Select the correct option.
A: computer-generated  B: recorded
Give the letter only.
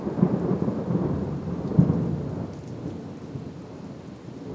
B